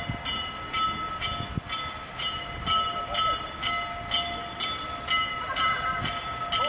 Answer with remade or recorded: recorded